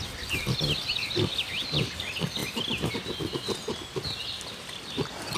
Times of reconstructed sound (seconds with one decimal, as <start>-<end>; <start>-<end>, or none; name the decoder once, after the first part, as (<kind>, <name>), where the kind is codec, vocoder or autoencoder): none